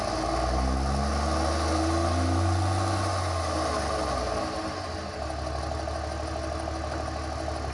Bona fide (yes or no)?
yes